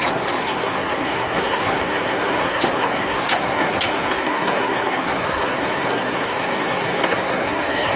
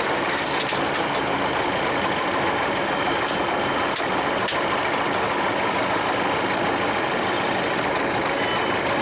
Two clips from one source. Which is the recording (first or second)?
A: second